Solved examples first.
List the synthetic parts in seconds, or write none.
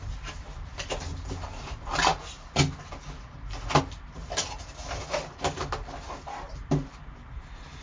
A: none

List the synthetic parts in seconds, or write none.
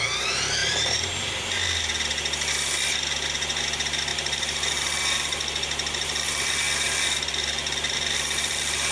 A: 0.6-1.3 (vocoder, BigVGAN v2); 4.1-8.9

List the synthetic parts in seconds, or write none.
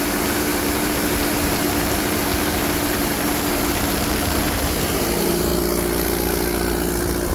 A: 0.0-5.5 (vocoder, BigVGAN v2)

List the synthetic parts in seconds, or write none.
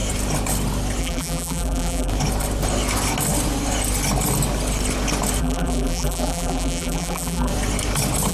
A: 1.0-2.1 (vocoder, BigVGAN v2); 5.4-7.5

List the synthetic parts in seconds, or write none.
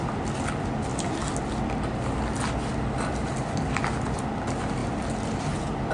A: 4.8-5.4 (vocoder, BigVGAN v2)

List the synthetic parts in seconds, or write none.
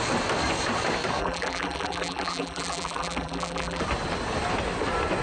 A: 1.2-3.8 (vocoder, BigVGAN v2)